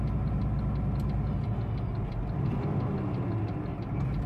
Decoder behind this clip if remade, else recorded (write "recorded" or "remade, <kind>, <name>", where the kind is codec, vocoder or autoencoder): recorded